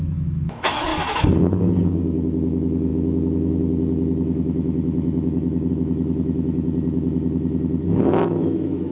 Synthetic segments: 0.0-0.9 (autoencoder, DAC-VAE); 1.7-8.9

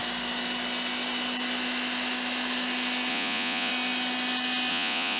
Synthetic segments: 3.1-3.7 (vocoder, Vocos); 4.7-5.2

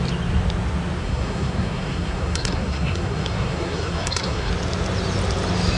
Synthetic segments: 1.0-4.5 (codec, SNAC)

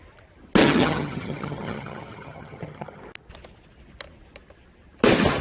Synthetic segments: 0.6-3.0 (vocoder, HiFi-GAN)

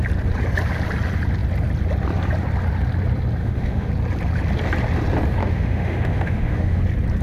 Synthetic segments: 3.4-3.9 (autoencoder, DAC-VAE); 5.4-6.8

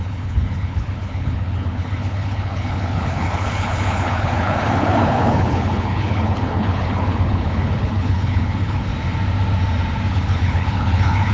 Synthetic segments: 0.0-8.9 (codec, HILCodec); 10.1-11.3